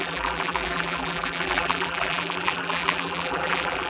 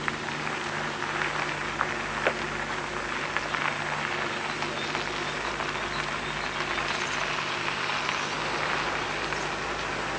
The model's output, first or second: first